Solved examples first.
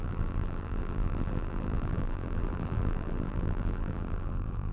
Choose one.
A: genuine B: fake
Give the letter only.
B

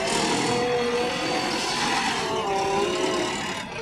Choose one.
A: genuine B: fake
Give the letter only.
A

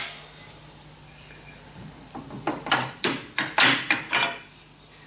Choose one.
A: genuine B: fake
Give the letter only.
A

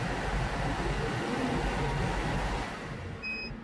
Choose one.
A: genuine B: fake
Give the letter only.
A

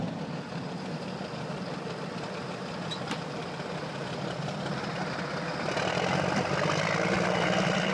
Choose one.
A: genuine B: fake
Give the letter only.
B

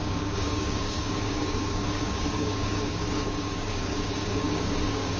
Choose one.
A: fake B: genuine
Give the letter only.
A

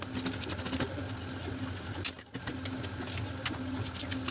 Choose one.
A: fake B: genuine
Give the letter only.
B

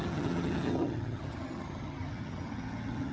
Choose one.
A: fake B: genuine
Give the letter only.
A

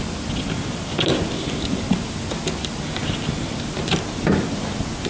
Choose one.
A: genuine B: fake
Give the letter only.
A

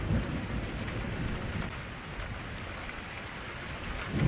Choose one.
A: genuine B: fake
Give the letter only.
A